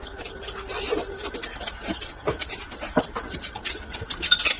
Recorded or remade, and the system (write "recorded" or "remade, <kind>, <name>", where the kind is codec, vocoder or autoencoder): recorded